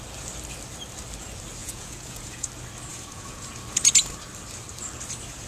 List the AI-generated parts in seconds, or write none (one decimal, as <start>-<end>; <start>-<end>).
1.6-2.5; 2.9-3.5